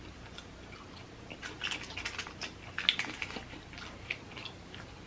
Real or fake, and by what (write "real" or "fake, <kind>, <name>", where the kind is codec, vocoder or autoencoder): real